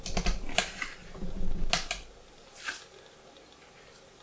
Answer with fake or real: real